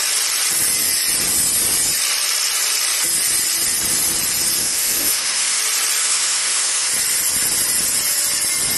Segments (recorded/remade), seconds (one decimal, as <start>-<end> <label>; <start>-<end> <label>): 0.0-4.6 recorded; 4.6-5.6 remade; 5.6-6.0 recorded; 6.0-6.9 remade; 6.9-8.8 recorded